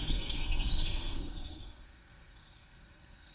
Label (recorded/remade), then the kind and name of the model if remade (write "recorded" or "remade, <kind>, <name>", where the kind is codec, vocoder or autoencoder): remade, codec, SNAC